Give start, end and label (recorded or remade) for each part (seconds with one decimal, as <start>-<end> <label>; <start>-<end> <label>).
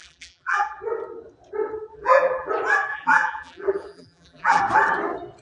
0.0-0.8 remade; 0.8-1.9 recorded; 1.9-2.5 remade; 2.5-2.9 recorded; 2.9-4.6 remade; 4.6-5.4 recorded